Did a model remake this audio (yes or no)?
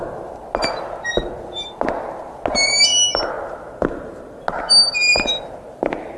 no